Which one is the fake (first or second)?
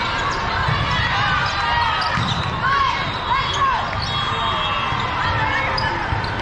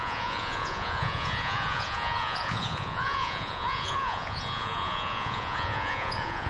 second